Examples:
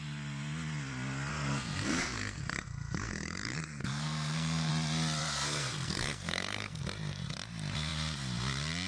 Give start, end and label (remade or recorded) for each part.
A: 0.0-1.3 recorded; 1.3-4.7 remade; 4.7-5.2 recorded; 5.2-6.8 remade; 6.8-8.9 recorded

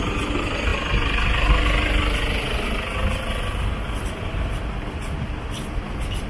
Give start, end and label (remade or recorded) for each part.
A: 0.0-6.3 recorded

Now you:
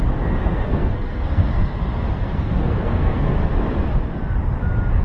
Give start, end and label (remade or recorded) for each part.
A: 0.0-0.4 recorded; 0.4-3.4 remade; 3.4-5.0 recorded